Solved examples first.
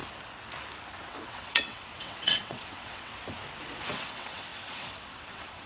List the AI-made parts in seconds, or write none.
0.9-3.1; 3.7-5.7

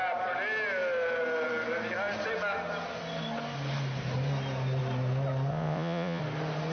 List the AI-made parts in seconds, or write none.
5.5-6.2

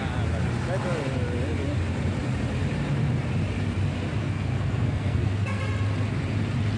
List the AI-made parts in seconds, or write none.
4.2-5.6

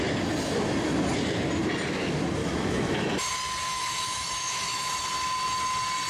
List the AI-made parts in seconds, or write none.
2.4-3.3; 3.7-4.9

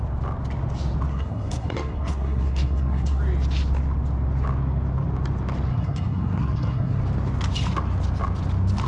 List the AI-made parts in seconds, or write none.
1.1-3.2; 5.7-7.0

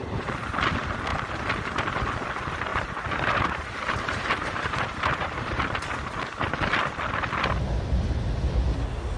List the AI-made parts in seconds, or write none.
2.7-5.6

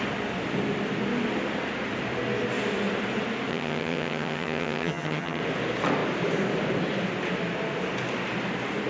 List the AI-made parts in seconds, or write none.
3.5-5.4

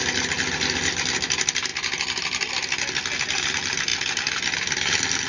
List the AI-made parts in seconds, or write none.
none